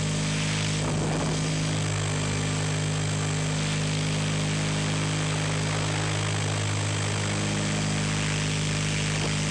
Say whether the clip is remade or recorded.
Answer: recorded